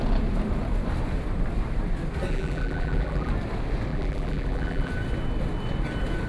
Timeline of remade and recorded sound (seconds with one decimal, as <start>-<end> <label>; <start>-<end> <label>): 0.0-2.3 recorded; 2.3-3.3 remade; 3.3-3.9 recorded; 3.9-4.9 remade; 4.9-6.3 recorded